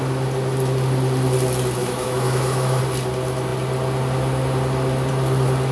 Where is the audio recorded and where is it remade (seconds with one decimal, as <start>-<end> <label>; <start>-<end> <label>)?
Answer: 0.0-1.8 recorded; 1.8-2.8 remade; 2.8-5.7 recorded